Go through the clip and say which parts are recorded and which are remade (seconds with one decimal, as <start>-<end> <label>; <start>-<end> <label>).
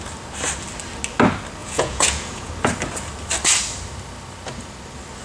0.0-1.6 recorded; 1.6-2.5 remade; 2.5-5.2 recorded